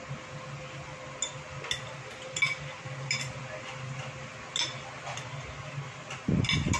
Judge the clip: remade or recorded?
recorded